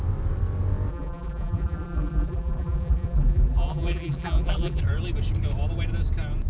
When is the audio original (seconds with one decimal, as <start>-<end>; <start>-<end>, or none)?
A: 0.0-0.9; 4.8-6.5